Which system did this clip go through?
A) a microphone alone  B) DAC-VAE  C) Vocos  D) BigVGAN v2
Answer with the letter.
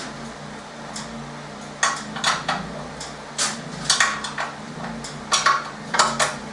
A